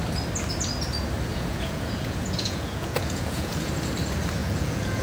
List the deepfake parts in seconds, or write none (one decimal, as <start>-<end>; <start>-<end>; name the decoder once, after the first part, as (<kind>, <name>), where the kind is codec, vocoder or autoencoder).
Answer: 1.3-3.7 (vocoder, Vocos); 4.4-5.0